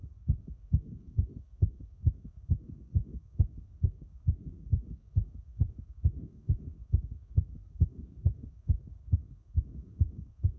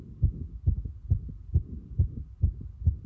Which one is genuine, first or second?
second